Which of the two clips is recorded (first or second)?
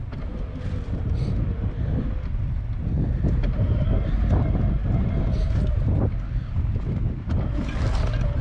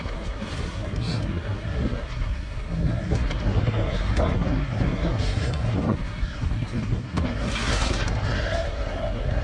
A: first